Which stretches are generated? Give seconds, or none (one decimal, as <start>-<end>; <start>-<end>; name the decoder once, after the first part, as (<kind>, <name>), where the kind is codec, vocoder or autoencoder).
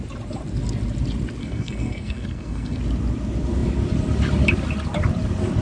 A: 1.4-2.8 (codec, SNAC)